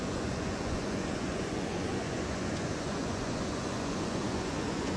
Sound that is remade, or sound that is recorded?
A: remade